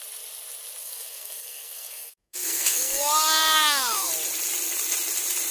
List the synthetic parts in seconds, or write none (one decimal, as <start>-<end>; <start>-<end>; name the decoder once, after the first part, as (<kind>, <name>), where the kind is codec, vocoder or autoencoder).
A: 0.8-4.1 (codec, SNAC)